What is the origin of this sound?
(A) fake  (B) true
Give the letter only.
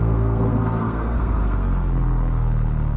A